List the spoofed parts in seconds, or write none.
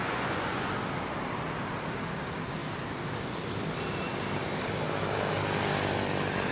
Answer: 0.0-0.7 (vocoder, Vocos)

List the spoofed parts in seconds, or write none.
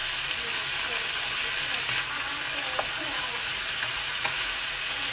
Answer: 1.9-2.3 (vocoder, Vocos); 2.9-5.1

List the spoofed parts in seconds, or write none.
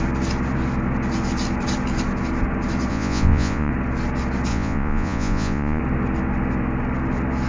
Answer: 2.9-3.7 (vocoder, Vocos); 4.5-5.8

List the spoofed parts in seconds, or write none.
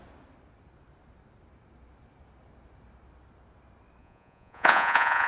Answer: 4.0-5.3 (vocoder, Vocos)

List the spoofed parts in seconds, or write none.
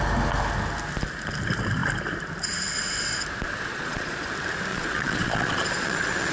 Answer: 3.7-4.2 (vocoder, Vocos); 4.7-6.3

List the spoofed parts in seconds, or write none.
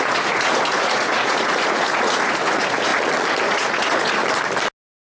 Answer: 0.0-2.9 (vocoder, Vocos); 3.4-4.2